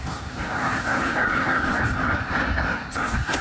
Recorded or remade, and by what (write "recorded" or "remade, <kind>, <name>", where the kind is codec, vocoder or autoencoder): remade, codec, SNAC